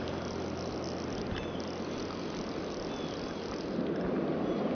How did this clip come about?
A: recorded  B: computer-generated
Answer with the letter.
A